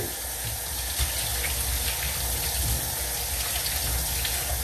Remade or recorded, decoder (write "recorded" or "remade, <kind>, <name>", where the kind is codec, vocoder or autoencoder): recorded